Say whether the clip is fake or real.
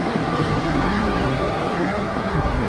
fake